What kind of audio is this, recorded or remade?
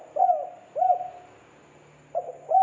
recorded